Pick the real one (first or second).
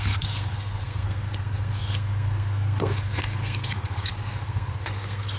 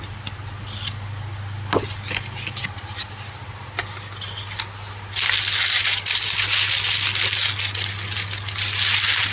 second